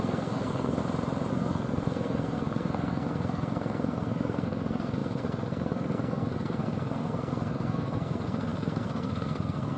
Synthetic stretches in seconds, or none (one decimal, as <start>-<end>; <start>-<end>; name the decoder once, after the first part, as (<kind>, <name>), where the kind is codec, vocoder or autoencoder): 0.0-0.8 (codec, SNAC); 1.3-9.8